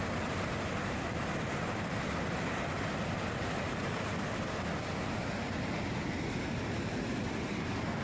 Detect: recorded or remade recorded